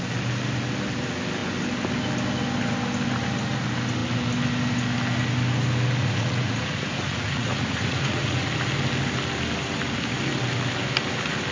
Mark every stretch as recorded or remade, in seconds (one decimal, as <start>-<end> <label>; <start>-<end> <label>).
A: 0.0-6.0 recorded; 6.0-8.5 remade; 8.5-11.5 recorded